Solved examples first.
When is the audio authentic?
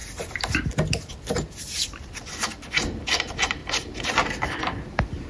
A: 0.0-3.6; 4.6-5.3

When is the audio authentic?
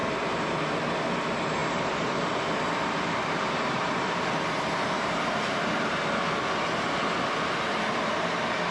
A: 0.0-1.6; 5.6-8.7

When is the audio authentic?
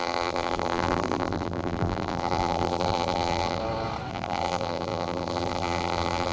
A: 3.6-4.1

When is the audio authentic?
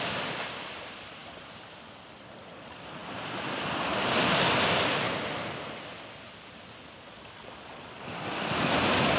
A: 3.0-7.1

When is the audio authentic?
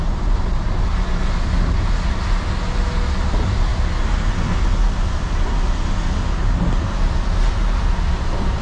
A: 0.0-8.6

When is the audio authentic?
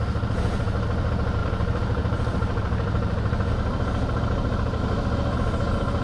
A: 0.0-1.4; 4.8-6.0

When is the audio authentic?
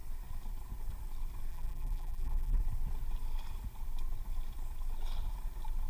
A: 0.0-1.5; 2.6-5.9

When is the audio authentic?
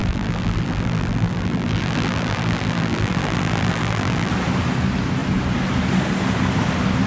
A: 4.3-7.1